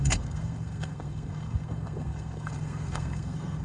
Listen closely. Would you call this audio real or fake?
fake